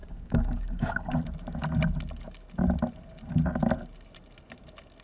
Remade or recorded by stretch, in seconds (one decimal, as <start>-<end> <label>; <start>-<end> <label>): 0.0-0.9 remade; 0.9-5.0 recorded